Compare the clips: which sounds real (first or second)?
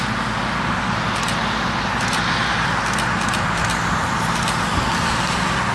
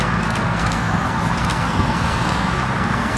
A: first